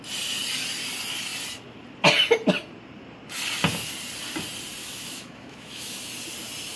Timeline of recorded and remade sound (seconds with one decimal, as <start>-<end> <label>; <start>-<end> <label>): 0.0-4.8 recorded; 4.8-6.0 remade; 6.0-6.8 recorded